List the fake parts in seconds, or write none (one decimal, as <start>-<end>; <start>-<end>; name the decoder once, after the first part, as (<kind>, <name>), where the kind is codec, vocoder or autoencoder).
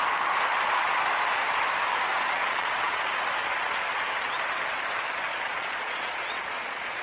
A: 2.1-3.1 (vocoder, Vocos); 5.3-7.0